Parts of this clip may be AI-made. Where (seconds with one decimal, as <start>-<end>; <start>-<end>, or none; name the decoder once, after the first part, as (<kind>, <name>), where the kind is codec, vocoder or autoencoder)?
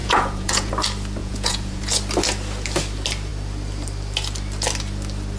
0.0-0.7 (vocoder, Vocos); 1.2-1.8